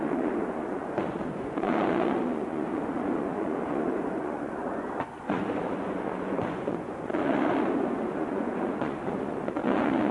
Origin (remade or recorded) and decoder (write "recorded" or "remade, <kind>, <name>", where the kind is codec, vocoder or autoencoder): remade, vocoder, Vocos